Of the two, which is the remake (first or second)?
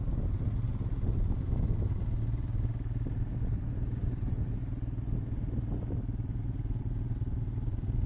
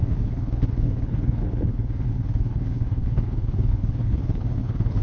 second